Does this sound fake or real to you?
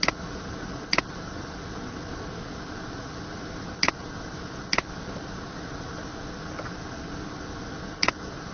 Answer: real